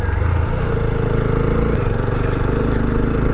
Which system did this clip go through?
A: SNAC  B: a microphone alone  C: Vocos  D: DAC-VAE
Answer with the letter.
B